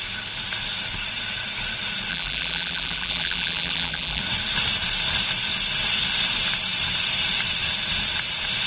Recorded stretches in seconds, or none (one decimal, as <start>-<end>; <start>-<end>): 0.0-2.1; 4.2-8.7